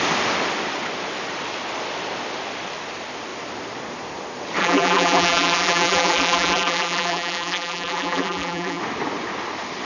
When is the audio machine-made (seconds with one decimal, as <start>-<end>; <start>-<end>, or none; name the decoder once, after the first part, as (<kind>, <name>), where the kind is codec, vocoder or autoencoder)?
4.6-8.8 (vocoder, BigVGAN v2)